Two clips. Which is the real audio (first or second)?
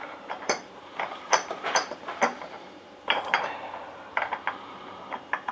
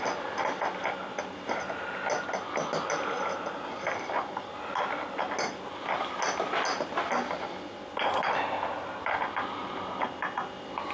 second